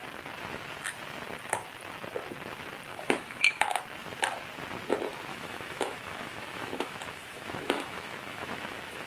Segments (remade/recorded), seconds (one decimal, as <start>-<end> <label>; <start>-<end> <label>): 0.0-2.9 recorded; 2.9-3.8 remade; 3.8-5.3 recorded; 5.3-9.1 remade